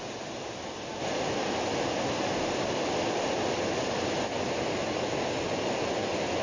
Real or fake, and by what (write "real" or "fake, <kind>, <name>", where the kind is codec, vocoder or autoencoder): real